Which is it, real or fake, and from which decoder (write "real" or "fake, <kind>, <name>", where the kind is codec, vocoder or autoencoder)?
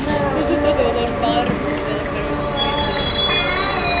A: real